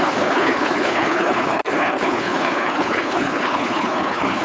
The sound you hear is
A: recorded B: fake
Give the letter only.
B